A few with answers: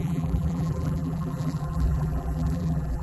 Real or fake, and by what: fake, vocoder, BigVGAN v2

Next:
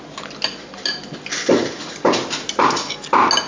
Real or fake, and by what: real